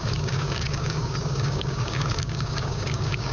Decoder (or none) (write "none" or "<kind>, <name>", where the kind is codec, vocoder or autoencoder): codec, DAC